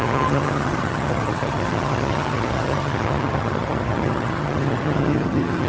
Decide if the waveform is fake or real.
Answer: fake